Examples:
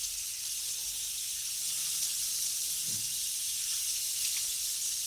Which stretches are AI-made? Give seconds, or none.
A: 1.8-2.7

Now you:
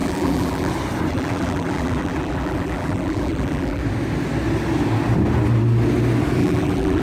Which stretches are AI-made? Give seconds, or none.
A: 0.0-0.7; 1.1-3.8; 6.4-7.0

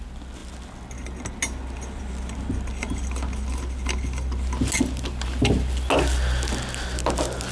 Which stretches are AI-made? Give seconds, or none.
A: none